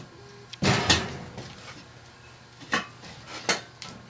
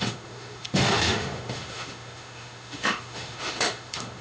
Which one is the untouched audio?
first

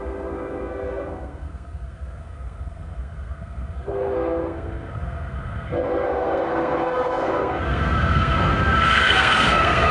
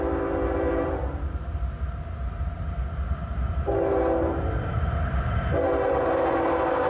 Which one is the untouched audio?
second